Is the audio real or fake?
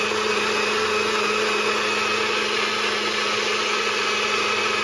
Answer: real